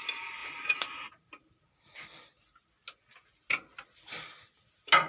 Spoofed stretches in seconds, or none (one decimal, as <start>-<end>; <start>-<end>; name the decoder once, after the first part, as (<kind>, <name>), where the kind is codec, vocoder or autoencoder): none